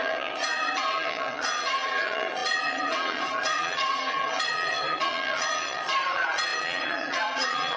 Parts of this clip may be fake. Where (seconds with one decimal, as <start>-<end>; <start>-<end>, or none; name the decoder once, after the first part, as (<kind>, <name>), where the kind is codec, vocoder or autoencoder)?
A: 0.0-7.8 (vocoder, Vocos)